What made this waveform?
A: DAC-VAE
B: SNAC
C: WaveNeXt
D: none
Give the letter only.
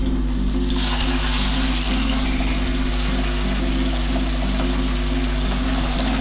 D